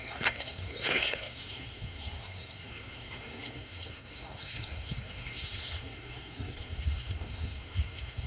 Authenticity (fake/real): fake